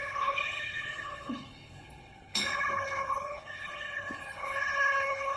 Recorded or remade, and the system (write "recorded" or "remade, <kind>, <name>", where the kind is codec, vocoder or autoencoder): remade, codec, HILCodec